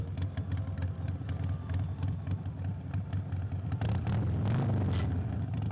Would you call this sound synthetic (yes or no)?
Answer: no